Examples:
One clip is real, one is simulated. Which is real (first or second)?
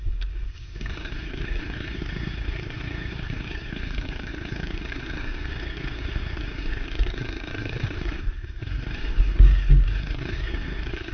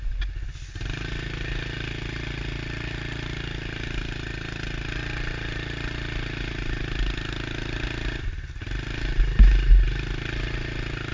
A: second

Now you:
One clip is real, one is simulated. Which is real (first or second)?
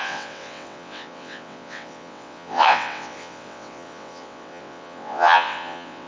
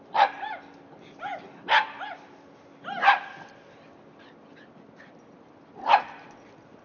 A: second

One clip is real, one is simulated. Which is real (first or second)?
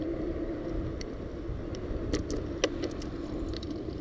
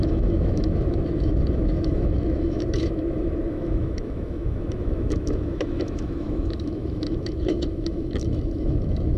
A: first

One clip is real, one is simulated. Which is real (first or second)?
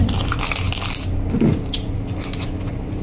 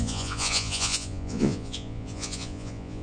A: first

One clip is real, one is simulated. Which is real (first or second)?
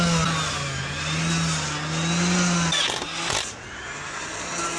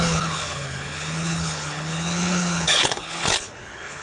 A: first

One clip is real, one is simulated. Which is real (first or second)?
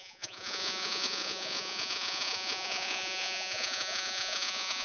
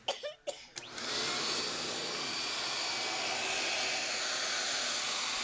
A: second